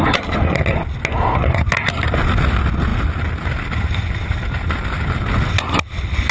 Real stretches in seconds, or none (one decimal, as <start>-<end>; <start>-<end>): 0.0-6.3